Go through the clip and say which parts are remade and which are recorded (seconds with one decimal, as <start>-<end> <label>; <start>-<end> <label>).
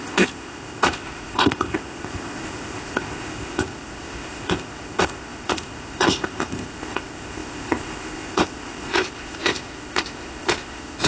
0.0-11.1 remade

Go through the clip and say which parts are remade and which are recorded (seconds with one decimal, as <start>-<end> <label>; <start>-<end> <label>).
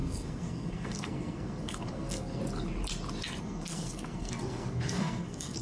0.0-2.4 remade; 2.4-3.4 recorded; 3.4-5.6 remade